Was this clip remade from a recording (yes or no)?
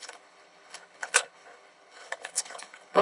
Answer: yes